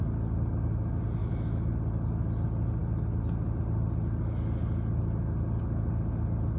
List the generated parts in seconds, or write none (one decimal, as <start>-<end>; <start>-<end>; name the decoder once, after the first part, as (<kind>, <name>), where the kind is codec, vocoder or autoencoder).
1.2-1.7 (autoencoder, DAC-VAE)